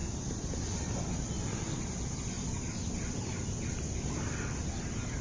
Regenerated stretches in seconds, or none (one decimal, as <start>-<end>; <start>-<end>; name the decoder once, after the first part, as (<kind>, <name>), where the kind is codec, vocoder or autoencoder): none